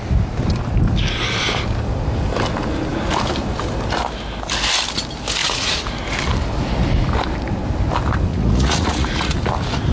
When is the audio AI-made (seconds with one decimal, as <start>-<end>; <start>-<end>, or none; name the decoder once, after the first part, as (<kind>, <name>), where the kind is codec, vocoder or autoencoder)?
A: 5.4-5.9 (vocoder, Vocos); 8.3-9.3